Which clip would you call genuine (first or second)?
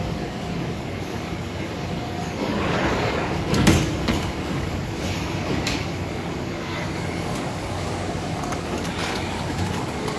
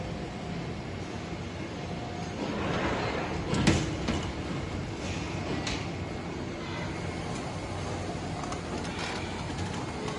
second